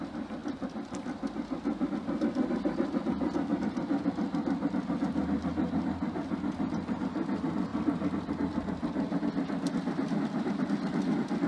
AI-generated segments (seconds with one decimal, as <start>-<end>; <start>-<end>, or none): none